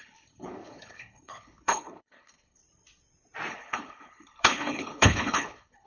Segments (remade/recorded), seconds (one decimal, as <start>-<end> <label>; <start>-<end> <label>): 0.0-2.6 remade; 2.6-3.5 recorded; 3.5-5.9 remade

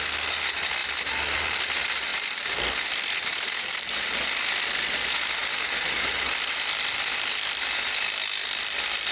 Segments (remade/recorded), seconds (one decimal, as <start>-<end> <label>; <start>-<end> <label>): 0.0-9.1 recorded

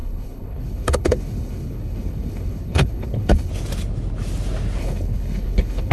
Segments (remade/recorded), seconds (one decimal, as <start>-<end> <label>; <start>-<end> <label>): 0.0-3.5 remade; 3.5-4.8 recorded; 4.8-5.9 remade

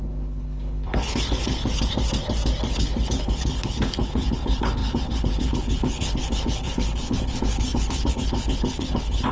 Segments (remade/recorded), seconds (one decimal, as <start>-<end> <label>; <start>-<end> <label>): 0.0-1.6 remade; 1.6-2.7 recorded; 2.7-9.3 remade

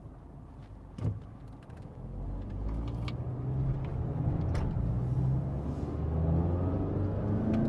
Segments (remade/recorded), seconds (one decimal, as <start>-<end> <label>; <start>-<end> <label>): 0.0-7.7 recorded

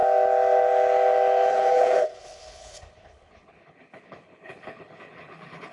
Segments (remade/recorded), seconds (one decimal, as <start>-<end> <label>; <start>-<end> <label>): 0.0-1.5 recorded; 1.5-5.7 remade

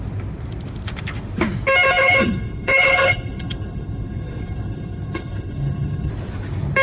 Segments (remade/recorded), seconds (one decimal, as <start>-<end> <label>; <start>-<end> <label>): 0.0-2.0 recorded; 2.0-6.1 remade; 6.1-6.8 recorded

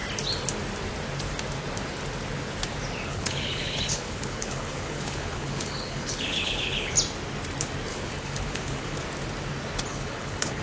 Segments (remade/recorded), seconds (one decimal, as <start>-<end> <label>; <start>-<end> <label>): 0.0-3.1 recorded; 3.1-6.9 remade; 6.9-7.9 recorded; 7.9-9.0 remade; 9.0-9.9 recorded; 9.9-10.6 remade